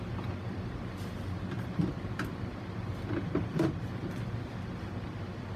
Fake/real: real